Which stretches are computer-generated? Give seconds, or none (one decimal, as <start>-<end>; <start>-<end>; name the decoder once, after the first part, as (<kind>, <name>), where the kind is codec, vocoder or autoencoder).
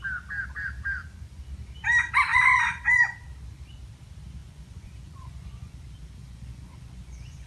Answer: 1.0-1.5 (vocoder, Vocos); 2.3-3.2; 4.4-5.8; 6.2-7.5